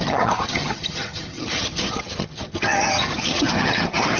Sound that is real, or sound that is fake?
fake